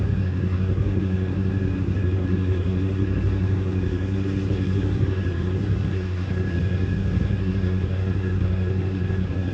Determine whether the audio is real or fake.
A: fake